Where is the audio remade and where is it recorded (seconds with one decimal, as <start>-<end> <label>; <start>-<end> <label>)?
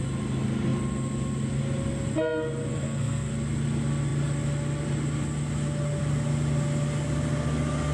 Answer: 0.0-2.7 recorded; 2.7-3.3 remade; 3.3-7.9 recorded